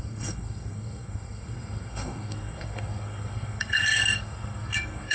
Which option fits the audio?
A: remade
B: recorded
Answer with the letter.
A